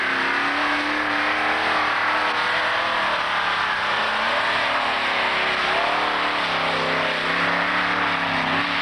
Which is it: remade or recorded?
recorded